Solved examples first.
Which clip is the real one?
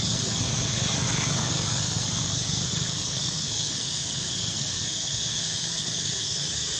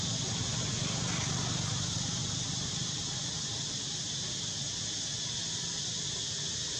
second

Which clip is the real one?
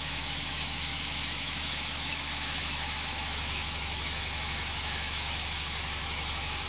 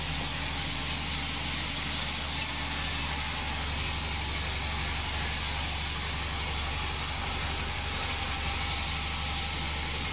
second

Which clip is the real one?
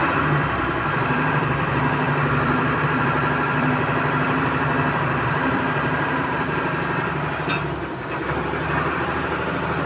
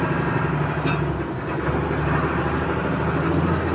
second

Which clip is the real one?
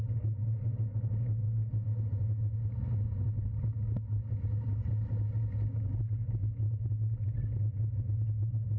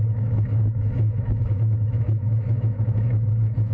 first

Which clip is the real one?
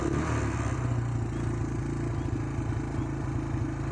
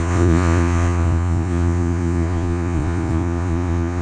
first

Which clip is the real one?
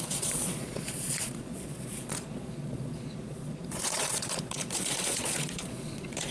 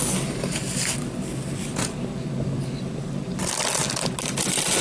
second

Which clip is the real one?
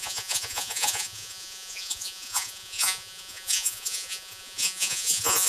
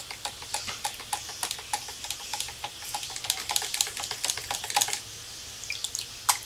second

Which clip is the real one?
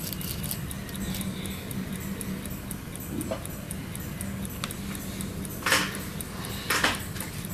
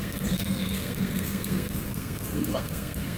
first